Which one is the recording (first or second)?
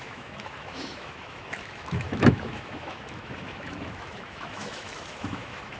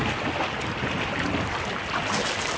second